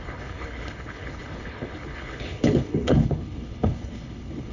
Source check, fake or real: fake